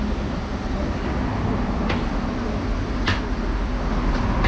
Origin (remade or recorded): recorded